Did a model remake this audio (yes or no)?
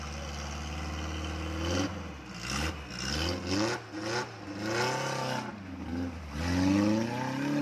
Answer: no